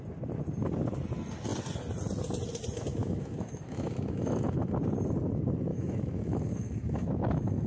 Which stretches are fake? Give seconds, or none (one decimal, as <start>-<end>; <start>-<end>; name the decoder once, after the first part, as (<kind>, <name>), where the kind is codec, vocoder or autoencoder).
3.0-4.6 (autoencoder, DAC-VAE); 5.7-7.7

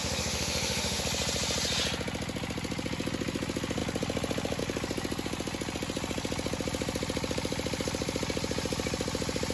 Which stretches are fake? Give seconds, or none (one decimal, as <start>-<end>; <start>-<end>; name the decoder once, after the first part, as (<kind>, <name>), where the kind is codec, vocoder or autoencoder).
0.0-1.0 (autoencoder, DAC-VAE)

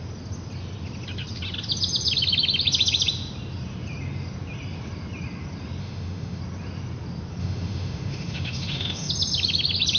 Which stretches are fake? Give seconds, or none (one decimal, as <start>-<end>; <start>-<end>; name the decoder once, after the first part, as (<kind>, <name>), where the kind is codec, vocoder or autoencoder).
5.8-6.4 (autoencoder, DAC-VAE); 7.4-9.1

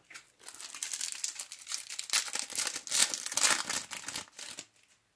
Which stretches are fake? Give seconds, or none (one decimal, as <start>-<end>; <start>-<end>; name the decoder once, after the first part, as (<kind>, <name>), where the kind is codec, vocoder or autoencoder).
none

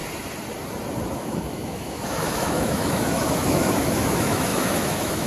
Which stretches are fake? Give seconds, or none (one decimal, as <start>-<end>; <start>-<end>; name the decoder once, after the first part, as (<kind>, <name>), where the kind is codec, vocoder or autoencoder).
1.1-5.3 (autoencoder, DAC-VAE)

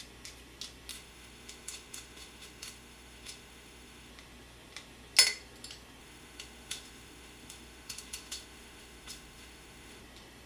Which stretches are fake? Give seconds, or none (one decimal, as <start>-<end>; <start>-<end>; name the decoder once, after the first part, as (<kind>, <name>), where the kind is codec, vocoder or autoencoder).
0.9-4.1 (autoencoder, DAC-VAE); 6.0-10.0

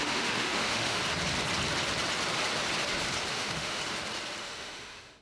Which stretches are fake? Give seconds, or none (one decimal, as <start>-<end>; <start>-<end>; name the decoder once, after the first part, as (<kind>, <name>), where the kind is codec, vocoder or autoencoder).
0.0-1.0 (autoencoder, DAC-VAE); 3.3-3.8; 4.4-5.2

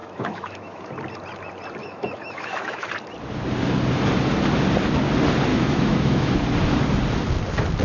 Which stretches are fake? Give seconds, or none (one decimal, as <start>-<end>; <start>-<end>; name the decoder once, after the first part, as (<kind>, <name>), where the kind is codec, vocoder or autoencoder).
0.0-0.9 (autoencoder, DAC-VAE); 1.8-2.9; 5.5-6.3